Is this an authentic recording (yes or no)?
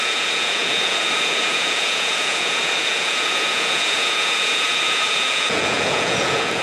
no